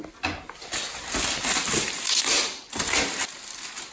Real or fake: real